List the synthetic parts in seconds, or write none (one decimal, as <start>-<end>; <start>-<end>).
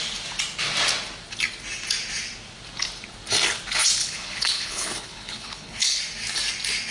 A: 4.0-6.0